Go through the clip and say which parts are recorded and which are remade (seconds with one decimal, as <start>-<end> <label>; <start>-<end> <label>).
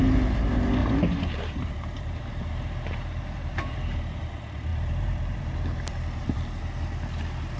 0.0-0.8 recorded; 0.8-4.2 remade; 4.2-4.7 recorded; 4.7-6.6 remade; 6.6-7.6 recorded